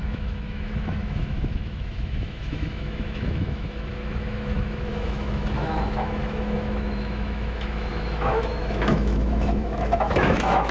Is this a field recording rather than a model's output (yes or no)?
no